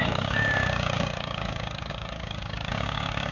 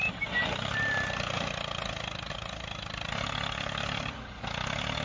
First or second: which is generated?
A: first